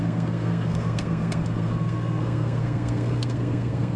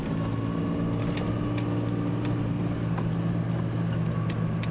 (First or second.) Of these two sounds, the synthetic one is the first